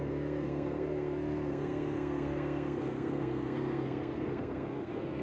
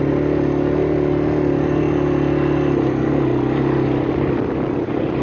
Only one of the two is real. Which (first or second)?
second